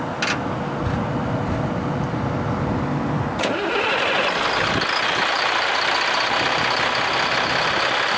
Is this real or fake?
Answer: real